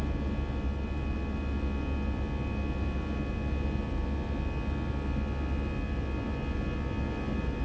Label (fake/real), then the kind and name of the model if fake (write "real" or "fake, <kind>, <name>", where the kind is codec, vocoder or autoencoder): real